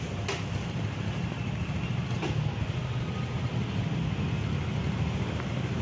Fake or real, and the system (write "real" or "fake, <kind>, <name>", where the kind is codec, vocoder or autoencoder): real